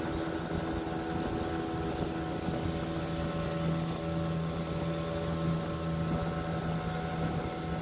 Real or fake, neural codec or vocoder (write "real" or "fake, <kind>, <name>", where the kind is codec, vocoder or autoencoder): real